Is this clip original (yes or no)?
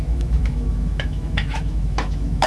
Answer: no